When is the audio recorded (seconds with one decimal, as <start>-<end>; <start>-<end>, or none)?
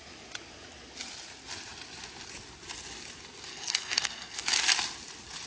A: 0.0-3.5; 4.4-5.5